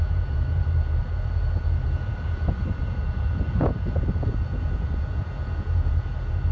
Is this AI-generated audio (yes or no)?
yes